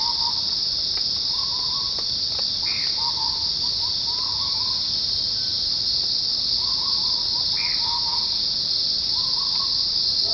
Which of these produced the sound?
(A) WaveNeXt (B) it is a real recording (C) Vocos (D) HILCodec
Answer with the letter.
B